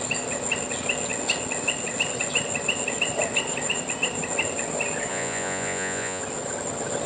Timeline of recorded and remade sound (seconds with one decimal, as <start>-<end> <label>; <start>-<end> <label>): 0.0-5.1 recorded; 5.1-6.2 remade; 6.2-7.1 recorded